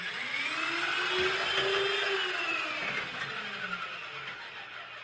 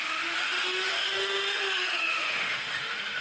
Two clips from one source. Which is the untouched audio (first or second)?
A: first